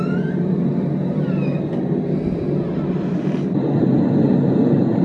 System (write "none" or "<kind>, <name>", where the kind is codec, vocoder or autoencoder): none